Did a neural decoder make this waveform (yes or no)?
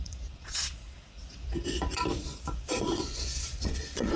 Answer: yes